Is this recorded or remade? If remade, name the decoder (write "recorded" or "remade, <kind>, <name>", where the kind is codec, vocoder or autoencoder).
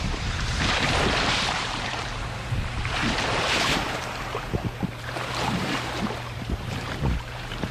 remade, vocoder, BigVGAN v2